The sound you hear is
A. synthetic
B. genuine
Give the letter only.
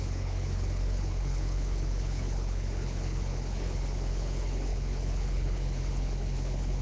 A